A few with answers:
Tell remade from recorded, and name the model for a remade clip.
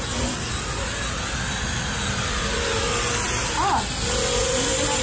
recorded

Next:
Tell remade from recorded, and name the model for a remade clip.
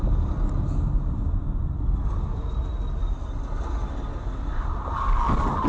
recorded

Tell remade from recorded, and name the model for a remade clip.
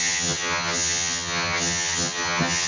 remade, vocoder, HiFi-GAN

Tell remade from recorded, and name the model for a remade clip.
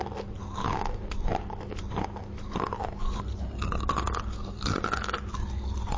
recorded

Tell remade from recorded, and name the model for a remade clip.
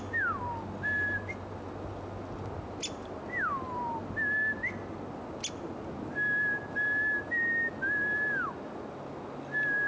recorded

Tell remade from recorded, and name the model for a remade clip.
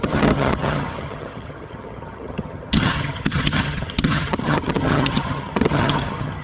remade, vocoder, HiFi-GAN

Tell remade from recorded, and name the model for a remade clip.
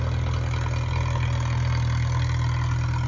recorded